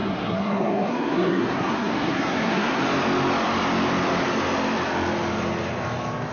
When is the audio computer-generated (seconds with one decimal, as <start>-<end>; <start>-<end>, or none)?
0.0-2.8